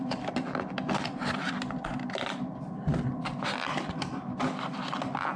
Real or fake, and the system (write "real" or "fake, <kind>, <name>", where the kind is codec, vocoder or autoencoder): real